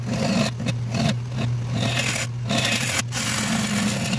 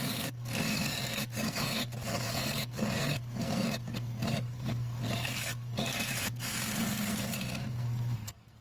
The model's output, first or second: second